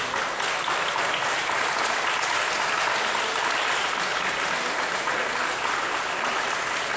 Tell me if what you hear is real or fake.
real